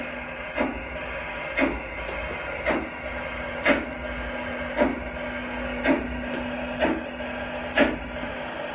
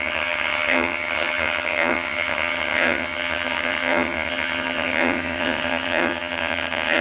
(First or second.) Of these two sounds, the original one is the first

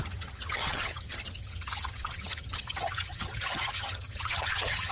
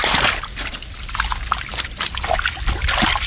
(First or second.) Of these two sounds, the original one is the second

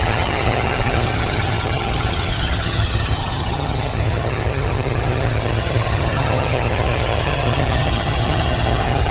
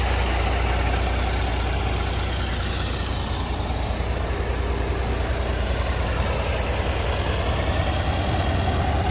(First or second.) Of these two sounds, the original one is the second